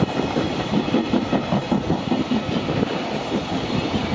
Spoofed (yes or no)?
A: no